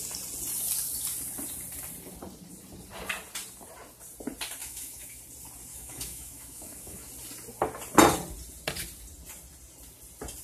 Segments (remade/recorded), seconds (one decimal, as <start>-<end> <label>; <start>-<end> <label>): 0.0-4.6 recorded; 4.6-5.2 remade; 5.2-5.7 recorded; 5.7-7.1 remade; 7.1-10.4 recorded